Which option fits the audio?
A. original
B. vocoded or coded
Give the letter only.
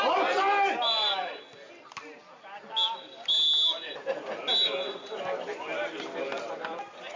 A